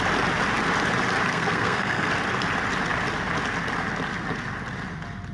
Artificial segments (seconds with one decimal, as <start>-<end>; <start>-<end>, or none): 1.3-2.1